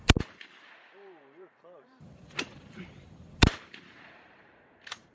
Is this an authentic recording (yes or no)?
no